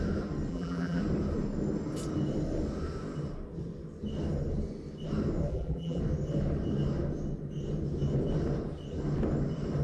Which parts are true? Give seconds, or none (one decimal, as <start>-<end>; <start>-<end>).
0.0-0.5; 1.0-5.5; 6.0-9.8

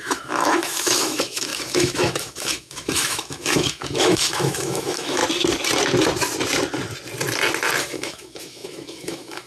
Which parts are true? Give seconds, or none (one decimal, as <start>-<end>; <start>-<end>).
5.2-7.8

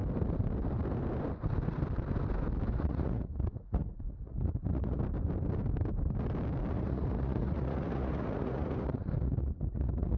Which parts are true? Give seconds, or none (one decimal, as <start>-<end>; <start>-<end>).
0.0-2.7; 5.0-6.7